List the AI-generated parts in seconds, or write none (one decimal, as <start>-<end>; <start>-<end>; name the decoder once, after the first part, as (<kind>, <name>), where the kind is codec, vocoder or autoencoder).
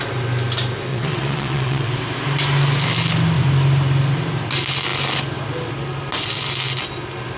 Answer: 0.9-1.9 (vocoder, WaveNeXt)